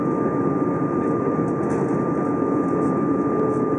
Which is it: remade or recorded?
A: recorded